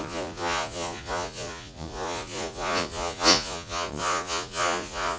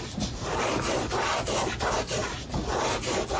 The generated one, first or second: first